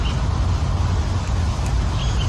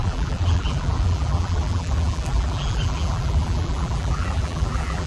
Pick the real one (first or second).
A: first